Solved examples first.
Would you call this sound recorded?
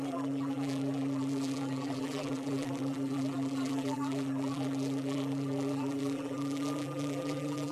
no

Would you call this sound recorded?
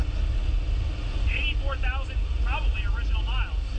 yes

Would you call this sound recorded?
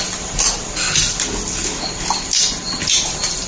yes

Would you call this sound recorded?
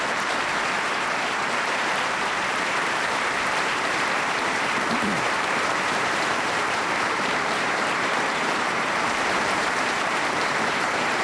no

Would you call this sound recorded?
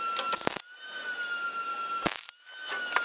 yes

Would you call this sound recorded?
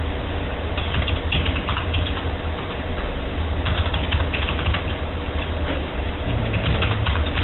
no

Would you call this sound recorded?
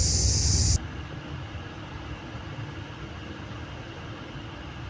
yes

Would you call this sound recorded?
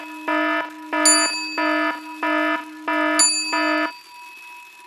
yes